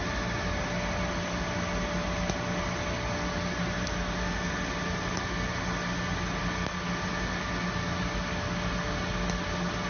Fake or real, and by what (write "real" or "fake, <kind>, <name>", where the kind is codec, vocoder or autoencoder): real